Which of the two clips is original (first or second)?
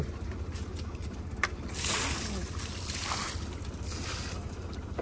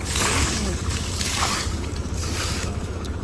first